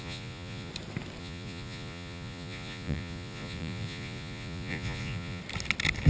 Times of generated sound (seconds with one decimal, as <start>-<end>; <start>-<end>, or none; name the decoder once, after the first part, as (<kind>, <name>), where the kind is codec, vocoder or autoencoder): 0.0-0.7 (vocoder, Vocos); 1.2-5.4